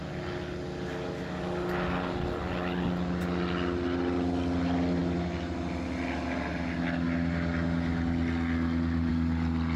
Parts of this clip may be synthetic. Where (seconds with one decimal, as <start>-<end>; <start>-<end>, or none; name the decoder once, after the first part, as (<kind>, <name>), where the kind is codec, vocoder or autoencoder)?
none